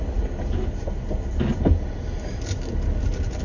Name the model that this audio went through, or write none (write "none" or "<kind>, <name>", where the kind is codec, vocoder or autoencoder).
none